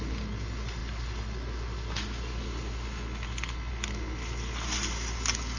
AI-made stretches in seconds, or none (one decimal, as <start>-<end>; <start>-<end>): none